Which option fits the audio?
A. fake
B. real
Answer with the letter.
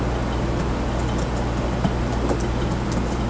B